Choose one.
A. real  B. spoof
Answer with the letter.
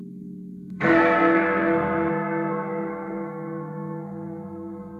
B